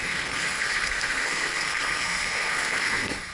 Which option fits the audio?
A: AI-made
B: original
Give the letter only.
A